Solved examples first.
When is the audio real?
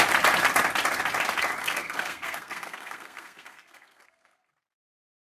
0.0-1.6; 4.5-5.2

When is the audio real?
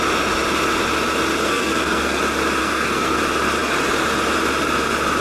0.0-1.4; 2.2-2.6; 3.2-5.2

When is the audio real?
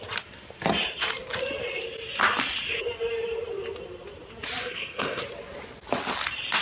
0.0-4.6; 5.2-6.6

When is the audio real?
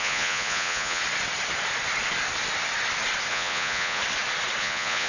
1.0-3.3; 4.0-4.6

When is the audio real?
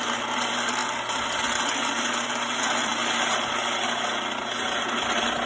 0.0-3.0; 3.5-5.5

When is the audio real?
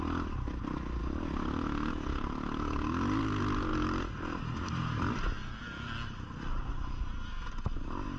0.0-8.2